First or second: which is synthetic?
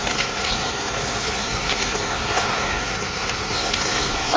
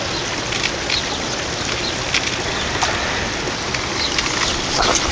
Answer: first